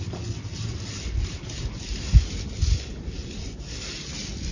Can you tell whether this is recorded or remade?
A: recorded